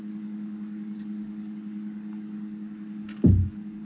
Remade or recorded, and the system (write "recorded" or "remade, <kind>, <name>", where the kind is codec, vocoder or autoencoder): remade, codec, DAC